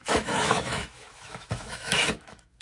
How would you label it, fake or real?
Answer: fake